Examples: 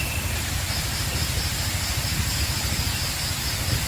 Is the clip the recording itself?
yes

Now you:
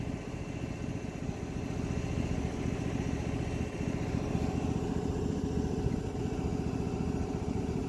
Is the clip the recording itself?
yes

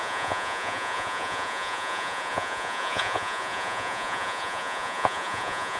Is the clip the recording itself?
no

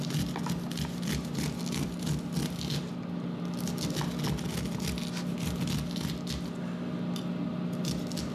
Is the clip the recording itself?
yes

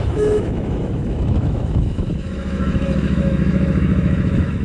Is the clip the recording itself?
no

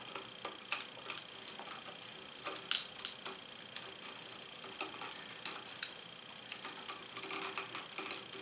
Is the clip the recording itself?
yes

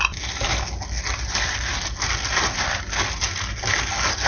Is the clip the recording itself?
yes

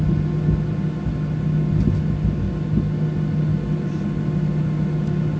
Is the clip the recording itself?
yes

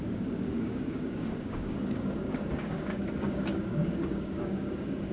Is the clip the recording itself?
no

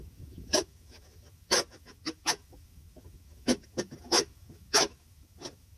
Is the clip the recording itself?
no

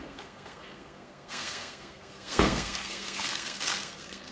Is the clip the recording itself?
no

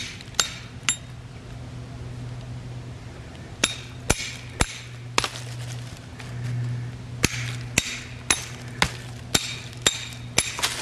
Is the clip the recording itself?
yes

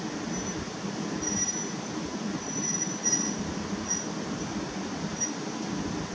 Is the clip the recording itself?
yes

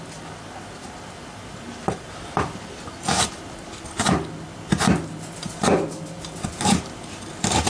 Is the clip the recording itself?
yes